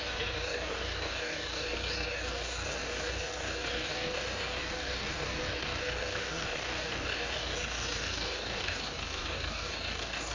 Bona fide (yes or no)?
no